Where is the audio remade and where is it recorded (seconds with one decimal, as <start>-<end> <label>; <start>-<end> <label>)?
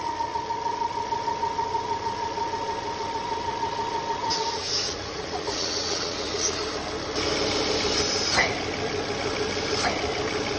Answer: 0.0-4.2 recorded; 4.2-6.6 remade; 6.6-10.6 recorded